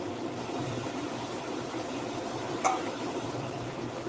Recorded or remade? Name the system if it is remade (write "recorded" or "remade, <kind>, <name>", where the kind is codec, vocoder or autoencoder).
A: remade, vocoder, BigVGAN v2